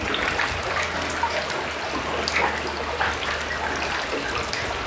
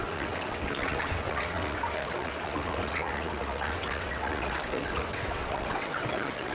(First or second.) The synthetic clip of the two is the second